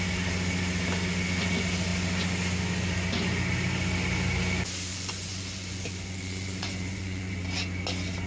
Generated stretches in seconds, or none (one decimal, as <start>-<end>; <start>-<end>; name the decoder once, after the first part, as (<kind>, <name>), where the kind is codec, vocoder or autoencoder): 4.9-7.4 (vocoder, Vocos)

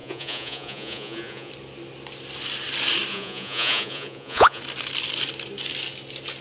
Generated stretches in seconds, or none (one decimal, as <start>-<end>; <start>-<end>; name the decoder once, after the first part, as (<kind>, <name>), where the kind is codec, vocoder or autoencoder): 0.0-1.5 (vocoder, Vocos); 3.1-4.6